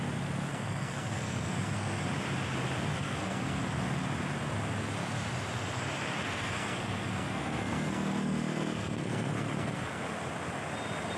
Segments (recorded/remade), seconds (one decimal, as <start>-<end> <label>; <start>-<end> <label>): 0.0-0.5 recorded; 0.5-2.0 remade; 2.0-2.9 recorded; 2.9-3.6 remade; 3.6-6.2 recorded; 6.2-10.0 remade; 10.0-11.2 recorded